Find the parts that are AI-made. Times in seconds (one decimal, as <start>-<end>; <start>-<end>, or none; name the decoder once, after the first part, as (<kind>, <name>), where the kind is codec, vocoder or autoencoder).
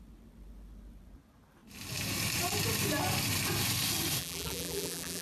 4.2-5.2 (vocoder, BigVGAN v2)